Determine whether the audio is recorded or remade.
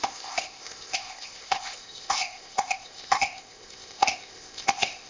remade